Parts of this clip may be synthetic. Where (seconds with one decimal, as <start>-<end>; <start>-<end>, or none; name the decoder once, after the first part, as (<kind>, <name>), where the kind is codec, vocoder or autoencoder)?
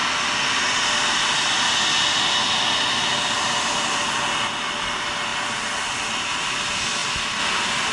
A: none